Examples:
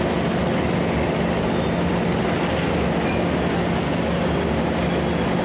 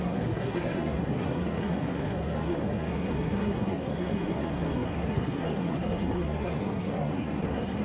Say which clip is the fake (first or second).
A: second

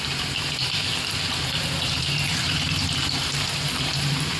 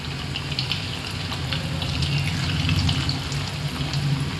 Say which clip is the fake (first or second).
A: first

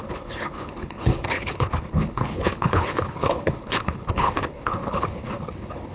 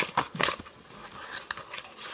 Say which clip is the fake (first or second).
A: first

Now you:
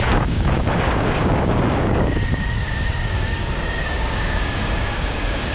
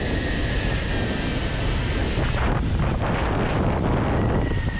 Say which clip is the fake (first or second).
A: first